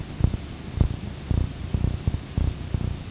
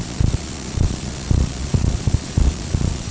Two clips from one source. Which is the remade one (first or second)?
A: second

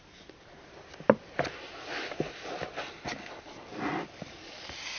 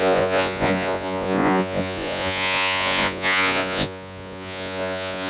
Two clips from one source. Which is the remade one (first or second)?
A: second